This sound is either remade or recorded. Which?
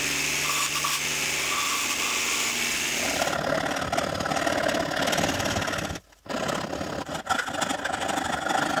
recorded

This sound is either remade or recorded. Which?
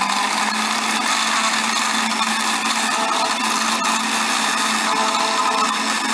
recorded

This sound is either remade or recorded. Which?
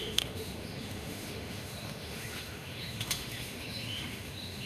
remade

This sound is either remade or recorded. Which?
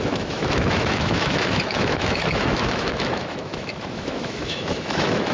remade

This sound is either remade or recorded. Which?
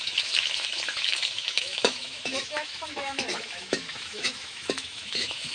remade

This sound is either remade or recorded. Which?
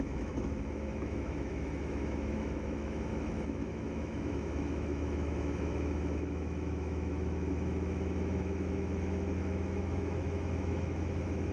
remade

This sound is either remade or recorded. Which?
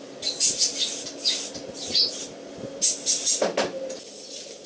recorded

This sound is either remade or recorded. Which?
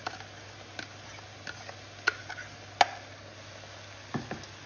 recorded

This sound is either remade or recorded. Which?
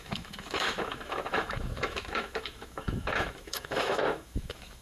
remade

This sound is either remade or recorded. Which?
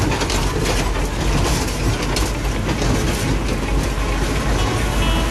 recorded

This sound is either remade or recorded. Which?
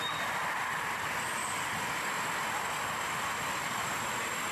recorded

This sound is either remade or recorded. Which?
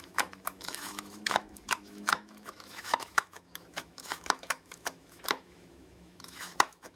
remade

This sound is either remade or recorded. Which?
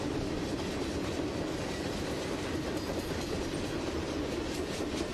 recorded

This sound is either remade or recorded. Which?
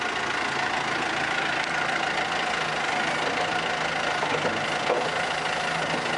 recorded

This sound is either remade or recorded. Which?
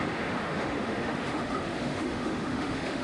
remade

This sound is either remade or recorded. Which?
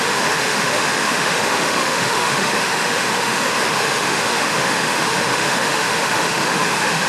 remade